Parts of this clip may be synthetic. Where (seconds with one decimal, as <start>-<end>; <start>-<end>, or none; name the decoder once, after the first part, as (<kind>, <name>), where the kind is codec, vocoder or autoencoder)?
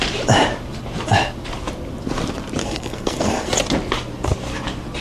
2.6-3.5 (codec, SNAC)